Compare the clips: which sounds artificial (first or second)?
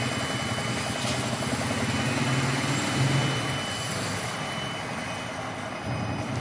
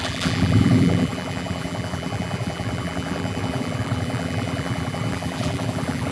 second